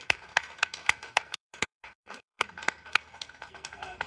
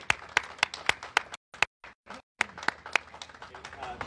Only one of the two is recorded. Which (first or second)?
second